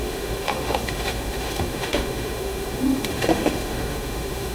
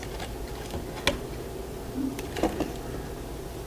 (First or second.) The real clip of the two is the second